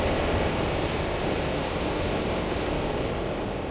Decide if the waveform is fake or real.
real